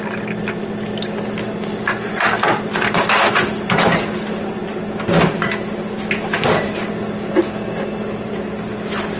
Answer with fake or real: real